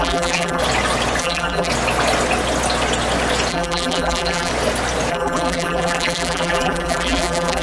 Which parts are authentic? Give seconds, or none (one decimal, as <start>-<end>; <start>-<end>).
0.6-1.2; 1.7-3.5; 4.5-5.1